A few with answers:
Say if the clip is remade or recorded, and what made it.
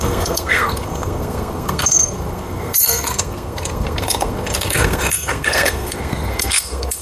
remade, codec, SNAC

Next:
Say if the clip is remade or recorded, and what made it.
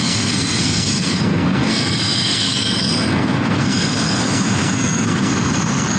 remade, codec, SNAC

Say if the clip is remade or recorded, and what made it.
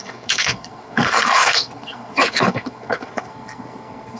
remade, codec, SNAC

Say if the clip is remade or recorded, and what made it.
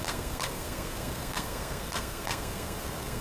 remade, codec, SNAC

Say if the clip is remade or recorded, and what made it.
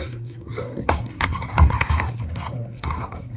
remade, codec, SNAC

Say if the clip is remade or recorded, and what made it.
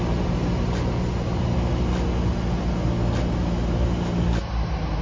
recorded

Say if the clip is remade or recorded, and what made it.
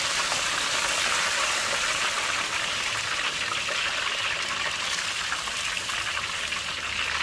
recorded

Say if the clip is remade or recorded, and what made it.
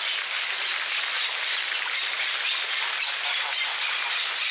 recorded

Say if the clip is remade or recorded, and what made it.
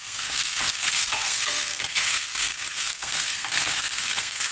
remade, codec, SNAC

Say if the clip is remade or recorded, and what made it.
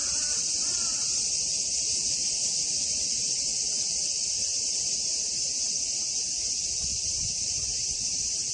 recorded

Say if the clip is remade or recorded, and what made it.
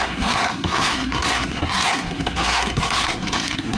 remade, codec, SNAC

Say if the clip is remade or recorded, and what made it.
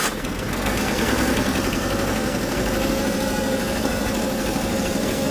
remade, codec, SNAC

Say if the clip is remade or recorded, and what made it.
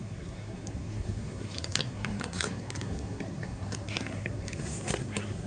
remade, codec, SNAC